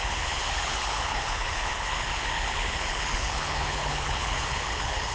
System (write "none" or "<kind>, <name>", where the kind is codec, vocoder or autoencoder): codec, HILCodec